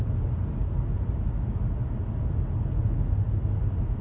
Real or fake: real